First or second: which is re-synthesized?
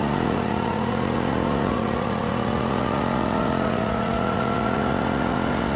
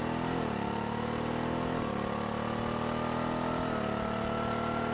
first